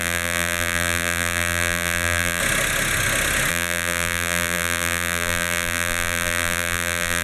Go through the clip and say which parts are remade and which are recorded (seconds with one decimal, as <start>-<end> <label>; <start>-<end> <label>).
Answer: 0.0-2.4 remade; 2.4-3.5 recorded; 3.5-7.2 remade